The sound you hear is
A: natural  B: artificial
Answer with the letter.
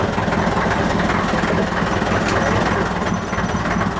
A